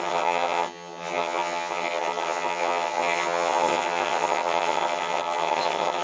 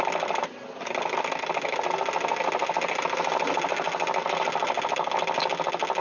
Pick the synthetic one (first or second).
first